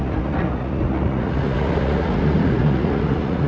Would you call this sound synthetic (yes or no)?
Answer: yes